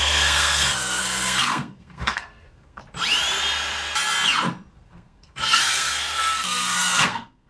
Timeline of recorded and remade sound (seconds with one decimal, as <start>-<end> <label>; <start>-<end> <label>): 0.0-2.8 remade; 2.8-4.7 recorded; 4.7-7.5 remade